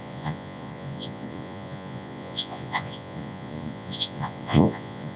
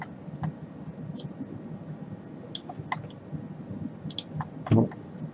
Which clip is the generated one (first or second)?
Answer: first